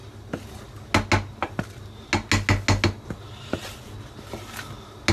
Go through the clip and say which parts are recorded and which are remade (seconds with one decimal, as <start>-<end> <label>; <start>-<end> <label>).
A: 0.0-5.1 recorded